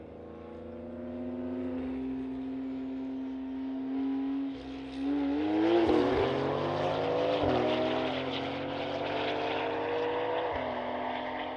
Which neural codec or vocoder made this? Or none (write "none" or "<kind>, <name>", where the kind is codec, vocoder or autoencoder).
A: none